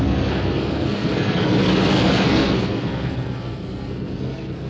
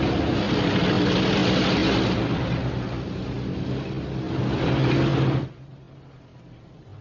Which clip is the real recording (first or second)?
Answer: second